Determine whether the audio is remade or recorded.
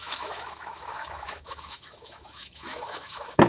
remade